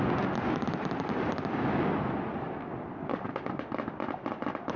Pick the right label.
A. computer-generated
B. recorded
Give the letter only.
B